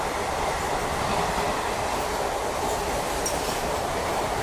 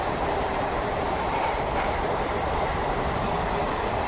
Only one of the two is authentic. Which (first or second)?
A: first